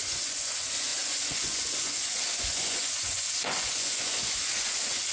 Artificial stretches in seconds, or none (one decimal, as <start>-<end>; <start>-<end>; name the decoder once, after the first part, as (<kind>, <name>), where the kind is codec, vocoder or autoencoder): 0.0-5.1 (vocoder, Vocos)